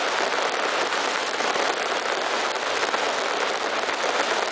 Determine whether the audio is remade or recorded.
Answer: recorded